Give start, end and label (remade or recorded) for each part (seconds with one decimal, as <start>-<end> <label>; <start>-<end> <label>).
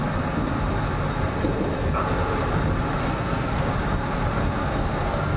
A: 0.0-3.0 recorded; 3.0-3.7 remade; 3.7-4.6 recorded; 4.6-5.4 remade